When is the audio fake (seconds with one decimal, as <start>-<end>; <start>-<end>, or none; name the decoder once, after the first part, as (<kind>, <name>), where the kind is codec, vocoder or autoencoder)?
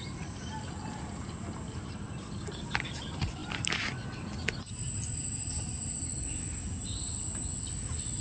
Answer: none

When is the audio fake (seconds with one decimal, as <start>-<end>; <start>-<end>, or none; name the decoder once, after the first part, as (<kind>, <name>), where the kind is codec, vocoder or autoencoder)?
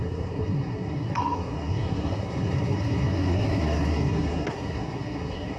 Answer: 0.0-5.6 (codec, SNAC)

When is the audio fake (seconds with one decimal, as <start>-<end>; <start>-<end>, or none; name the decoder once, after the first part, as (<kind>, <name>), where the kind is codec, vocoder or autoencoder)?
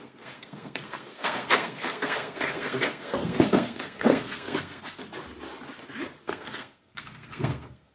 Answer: 0.0-5.0 (codec, SNAC); 6.2-7.9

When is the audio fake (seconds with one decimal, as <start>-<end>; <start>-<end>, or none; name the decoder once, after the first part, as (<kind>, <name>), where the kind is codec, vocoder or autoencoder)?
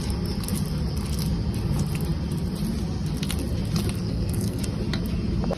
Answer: 4.0-4.6 (codec, SNAC)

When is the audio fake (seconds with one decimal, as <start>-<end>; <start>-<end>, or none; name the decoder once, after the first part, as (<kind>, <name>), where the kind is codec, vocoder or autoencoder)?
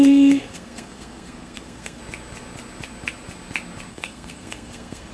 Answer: 0.0-2.0 (codec, SNAC); 3.9-5.1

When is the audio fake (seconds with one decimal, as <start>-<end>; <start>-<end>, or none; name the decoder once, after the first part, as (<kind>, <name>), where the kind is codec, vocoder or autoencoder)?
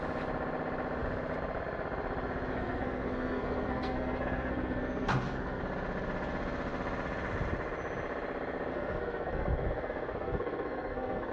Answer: 2.5-5.6 (codec, SNAC); 8.7-11.3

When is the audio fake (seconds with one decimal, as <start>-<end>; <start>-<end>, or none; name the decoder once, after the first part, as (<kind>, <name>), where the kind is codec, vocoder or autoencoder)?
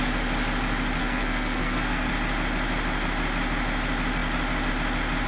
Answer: 1.0-2.1 (codec, SNAC)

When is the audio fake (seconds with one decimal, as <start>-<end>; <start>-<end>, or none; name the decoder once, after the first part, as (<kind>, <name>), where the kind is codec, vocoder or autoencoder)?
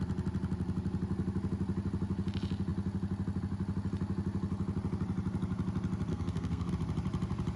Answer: 6.1-6.7 (codec, SNAC)